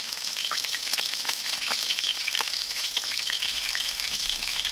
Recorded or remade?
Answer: remade